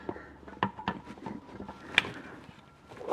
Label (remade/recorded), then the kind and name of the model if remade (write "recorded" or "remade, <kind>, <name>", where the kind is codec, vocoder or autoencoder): recorded